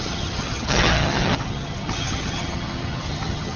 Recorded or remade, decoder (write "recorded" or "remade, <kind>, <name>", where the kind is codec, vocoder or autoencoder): remade, vocoder, HiFi-GAN